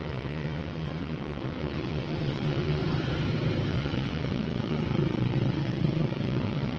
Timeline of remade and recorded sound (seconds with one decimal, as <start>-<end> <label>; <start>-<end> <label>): 0.0-2.8 remade; 2.8-3.7 recorded; 3.7-6.8 remade

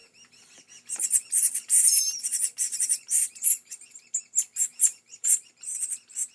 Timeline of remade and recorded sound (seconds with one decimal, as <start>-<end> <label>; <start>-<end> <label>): 0.0-3.8 remade; 3.8-4.7 recorded; 4.7-5.5 remade; 5.5-6.3 recorded

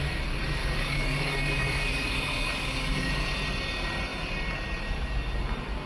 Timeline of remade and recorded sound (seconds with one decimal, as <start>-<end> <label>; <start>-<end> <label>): 0.0-0.6 recorded; 0.6-3.1 remade; 3.1-5.9 recorded

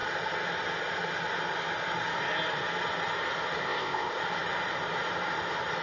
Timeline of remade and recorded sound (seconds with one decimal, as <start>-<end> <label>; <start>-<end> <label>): 0.0-3.6 recorded; 3.6-4.2 remade; 4.2-5.8 recorded